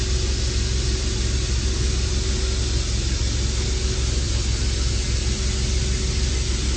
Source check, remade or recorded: recorded